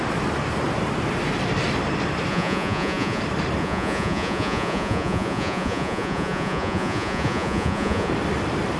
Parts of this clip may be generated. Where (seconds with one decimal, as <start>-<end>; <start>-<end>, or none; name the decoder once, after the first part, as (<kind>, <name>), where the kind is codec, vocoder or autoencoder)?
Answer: 2.3-3.2 (vocoder, Vocos); 3.6-8.1